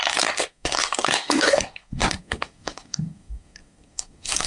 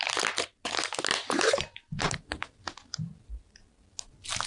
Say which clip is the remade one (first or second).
first